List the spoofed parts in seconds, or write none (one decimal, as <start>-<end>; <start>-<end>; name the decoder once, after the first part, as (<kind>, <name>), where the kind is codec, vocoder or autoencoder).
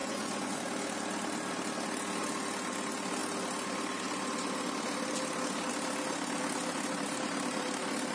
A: 0.0-0.6 (vocoder, Vocos)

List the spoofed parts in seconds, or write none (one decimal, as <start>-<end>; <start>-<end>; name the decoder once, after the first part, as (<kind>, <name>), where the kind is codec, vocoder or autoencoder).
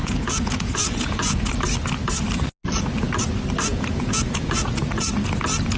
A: 0.0-1.5 (vocoder, Vocos); 3.7-4.8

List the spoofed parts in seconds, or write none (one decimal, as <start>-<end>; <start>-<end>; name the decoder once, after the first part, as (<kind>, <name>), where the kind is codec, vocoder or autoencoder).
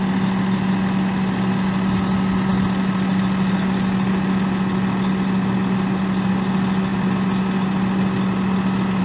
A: none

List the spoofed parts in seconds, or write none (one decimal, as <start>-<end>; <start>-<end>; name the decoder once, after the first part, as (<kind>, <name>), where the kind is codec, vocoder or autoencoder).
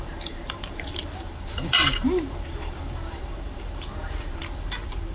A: 0.0-5.1 (vocoder, BigVGAN v2)